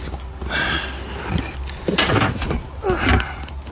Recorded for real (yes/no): yes